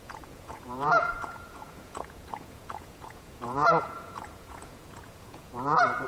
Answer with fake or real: fake